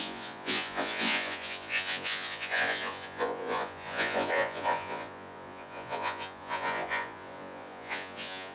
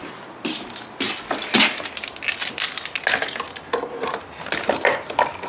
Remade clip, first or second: first